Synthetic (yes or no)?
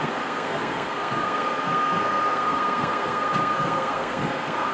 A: yes